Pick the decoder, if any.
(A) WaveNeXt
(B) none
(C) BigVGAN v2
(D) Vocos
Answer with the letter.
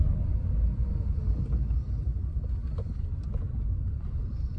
B